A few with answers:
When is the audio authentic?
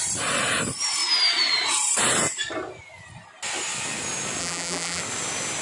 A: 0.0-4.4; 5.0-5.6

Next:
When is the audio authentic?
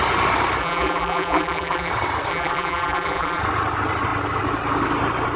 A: 0.0-0.6; 1.9-2.3; 3.4-5.4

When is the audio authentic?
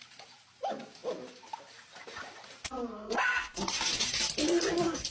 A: 0.0-5.1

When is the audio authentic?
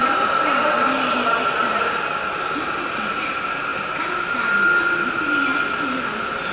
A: 0.0-6.5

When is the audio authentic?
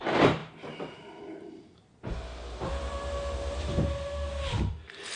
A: 0.0-5.2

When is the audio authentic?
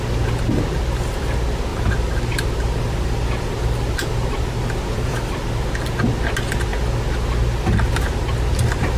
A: 0.0-1.7; 5.5-9.0